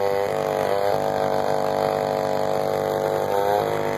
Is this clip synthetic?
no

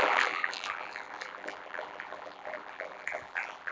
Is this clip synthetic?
yes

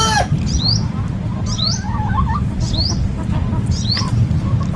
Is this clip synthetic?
yes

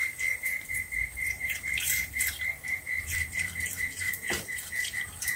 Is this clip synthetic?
yes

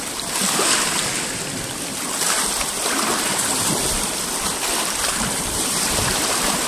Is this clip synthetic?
yes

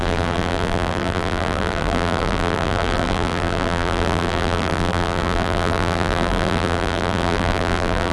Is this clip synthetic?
yes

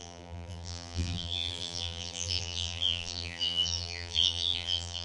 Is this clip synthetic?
yes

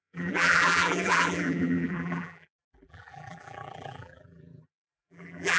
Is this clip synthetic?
yes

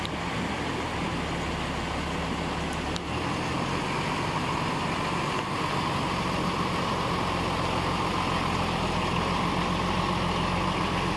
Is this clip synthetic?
no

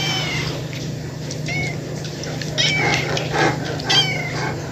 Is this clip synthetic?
no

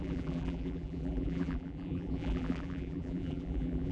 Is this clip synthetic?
yes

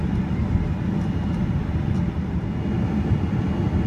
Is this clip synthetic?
no